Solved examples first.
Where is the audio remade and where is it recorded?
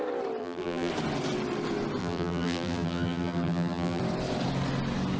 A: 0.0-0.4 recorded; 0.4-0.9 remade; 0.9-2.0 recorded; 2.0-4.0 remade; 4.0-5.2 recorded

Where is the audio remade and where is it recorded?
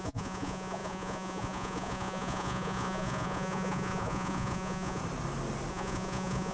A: 0.0-5.0 remade; 5.0-5.7 recorded; 5.7-6.5 remade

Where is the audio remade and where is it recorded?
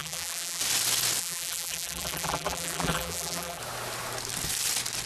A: 0.0-0.6 remade; 0.6-1.2 recorded; 1.2-3.6 remade; 3.6-5.1 recorded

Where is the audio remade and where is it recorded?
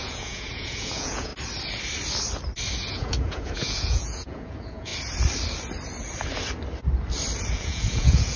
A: 0.0-1.3 remade; 1.3-2.9 recorded; 2.9-4.9 remade; 4.9-7.5 recorded; 7.5-8.4 remade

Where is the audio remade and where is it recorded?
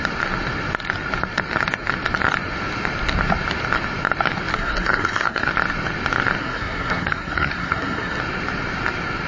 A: 0.0-4.5 recorded; 4.5-5.5 remade; 5.5-6.4 recorded; 6.4-8.2 remade; 8.2-9.3 recorded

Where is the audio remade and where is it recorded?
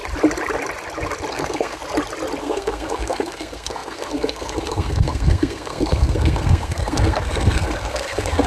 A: 0.0-1.3 recorded; 1.3-1.8 remade; 1.8-2.4 recorded; 2.4-8.5 remade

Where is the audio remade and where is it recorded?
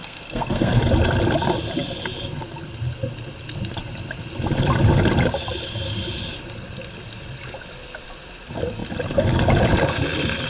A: 0.0-0.8 remade; 0.8-10.5 recorded